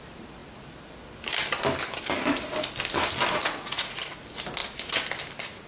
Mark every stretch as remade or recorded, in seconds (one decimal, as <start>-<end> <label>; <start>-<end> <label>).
0.0-3.4 recorded; 3.4-4.1 remade; 4.1-5.7 recorded